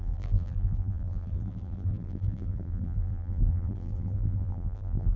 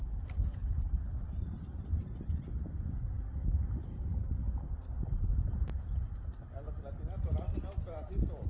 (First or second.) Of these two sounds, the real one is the second